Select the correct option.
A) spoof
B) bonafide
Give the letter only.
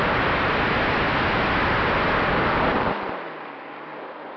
B